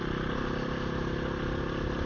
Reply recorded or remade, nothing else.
recorded